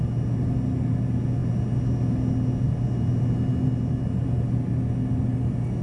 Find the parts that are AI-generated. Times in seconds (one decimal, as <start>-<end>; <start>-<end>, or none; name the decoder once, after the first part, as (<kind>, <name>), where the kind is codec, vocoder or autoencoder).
none